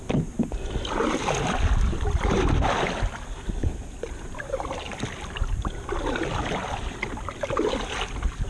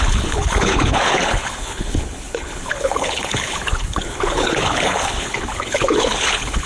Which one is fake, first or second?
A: second